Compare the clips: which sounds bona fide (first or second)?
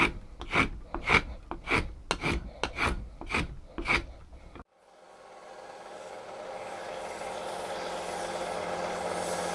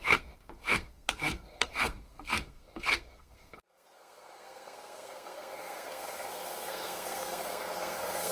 first